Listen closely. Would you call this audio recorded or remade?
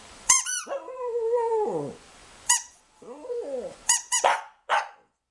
remade